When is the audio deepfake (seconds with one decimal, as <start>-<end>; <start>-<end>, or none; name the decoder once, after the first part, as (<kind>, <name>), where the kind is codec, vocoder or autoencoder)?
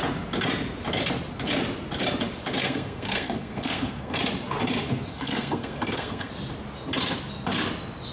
2.6-4.2 (codec, SNAC); 5.1-6.3